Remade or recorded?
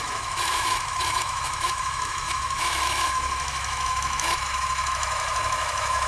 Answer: remade